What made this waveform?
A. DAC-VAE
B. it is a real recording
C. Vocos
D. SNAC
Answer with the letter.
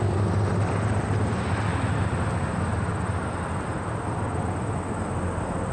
B